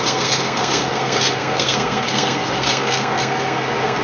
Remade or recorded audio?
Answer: remade